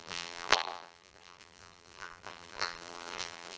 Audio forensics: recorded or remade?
remade